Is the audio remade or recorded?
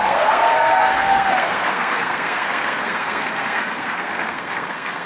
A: remade